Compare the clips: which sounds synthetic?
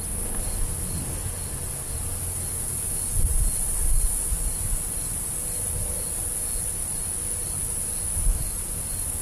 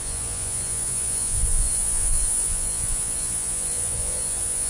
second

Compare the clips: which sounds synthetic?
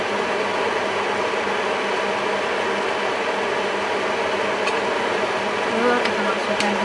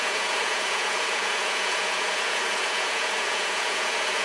second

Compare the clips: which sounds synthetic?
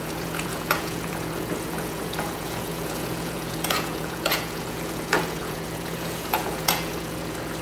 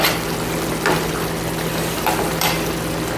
first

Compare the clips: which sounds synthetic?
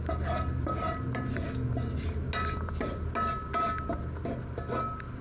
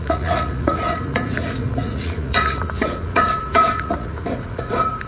second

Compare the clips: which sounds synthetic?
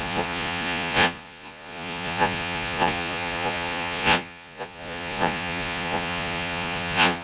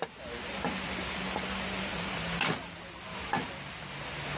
first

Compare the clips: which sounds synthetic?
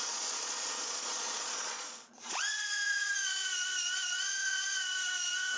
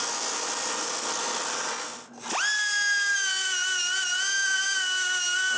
first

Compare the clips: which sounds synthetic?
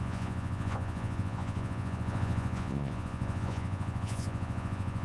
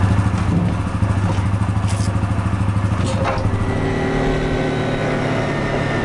first